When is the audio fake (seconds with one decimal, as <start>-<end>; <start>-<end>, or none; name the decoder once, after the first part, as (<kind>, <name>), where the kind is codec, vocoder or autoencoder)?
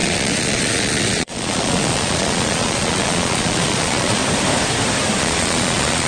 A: 0.0-4.2 (vocoder, Vocos); 5.2-6.1